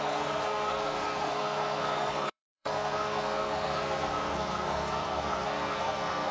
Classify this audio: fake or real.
fake